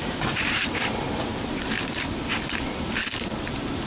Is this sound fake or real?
fake